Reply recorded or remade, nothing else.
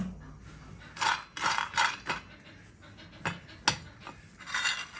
recorded